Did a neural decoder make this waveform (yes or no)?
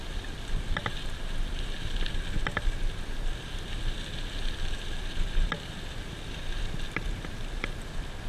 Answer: no